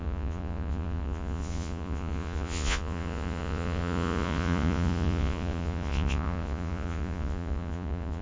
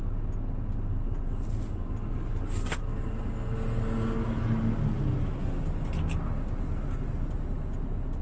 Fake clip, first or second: first